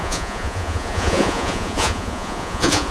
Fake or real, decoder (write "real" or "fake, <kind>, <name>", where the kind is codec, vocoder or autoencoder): fake, vocoder, Vocos